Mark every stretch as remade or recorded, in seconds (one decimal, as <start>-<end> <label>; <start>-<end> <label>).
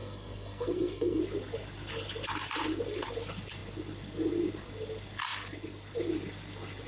0.0-1.2 remade; 1.2-6.9 recorded